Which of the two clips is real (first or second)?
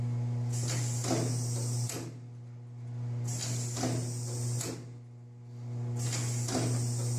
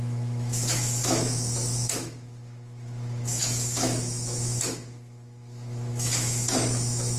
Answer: first